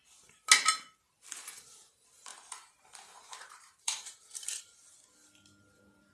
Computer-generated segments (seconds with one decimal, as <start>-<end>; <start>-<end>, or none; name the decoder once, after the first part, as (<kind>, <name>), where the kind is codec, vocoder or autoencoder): 2.3-4.6 (vocoder, BigVGAN v2)